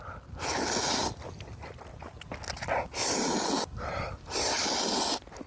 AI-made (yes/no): no